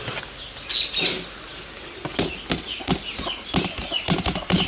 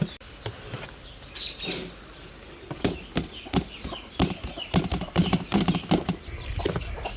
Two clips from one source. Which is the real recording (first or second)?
first